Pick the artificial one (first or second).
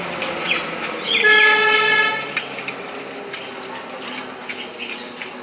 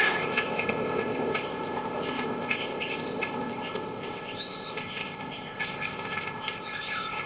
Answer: second